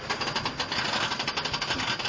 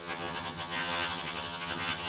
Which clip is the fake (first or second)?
second